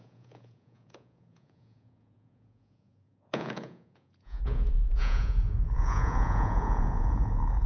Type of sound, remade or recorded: remade